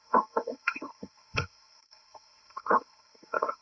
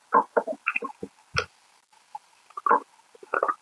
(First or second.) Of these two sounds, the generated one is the first